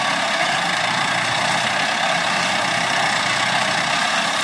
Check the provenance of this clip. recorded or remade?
recorded